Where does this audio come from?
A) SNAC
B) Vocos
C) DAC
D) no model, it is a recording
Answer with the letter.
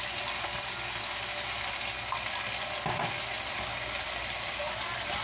D